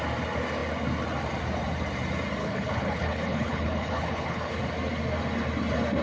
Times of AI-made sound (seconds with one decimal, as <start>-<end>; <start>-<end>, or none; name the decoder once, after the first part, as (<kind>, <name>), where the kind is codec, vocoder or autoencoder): 2.4-4.6 (codec, HILCodec)